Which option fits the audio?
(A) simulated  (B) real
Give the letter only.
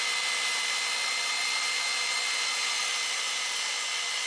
B